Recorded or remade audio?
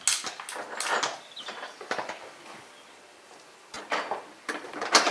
recorded